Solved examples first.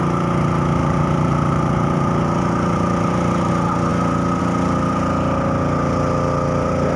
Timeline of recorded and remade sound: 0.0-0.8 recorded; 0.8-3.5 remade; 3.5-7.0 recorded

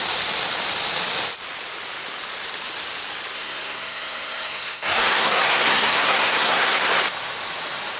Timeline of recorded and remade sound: 0.0-3.3 recorded; 3.3-6.9 remade; 6.9-8.0 recorded

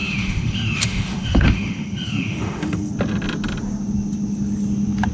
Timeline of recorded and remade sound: 0.0-2.9 remade; 2.9-5.1 recorded

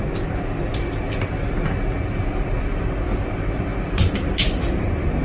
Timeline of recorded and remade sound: 0.0-2.0 recorded; 2.0-5.2 remade

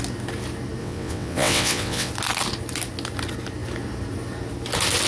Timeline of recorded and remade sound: 0.0-0.8 recorded; 0.8-2.1 remade; 2.1-5.1 recorded

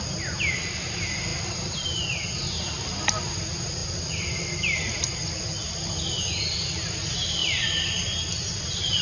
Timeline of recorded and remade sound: 0.0-3.8 recorded; 3.8-5.0 remade; 5.0-9.0 recorded